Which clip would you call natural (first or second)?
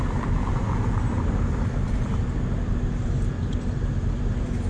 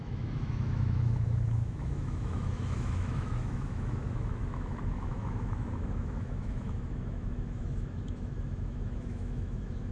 first